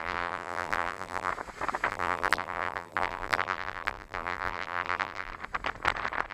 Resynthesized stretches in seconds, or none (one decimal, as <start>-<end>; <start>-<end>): 0.0-1.3; 1.9-5.3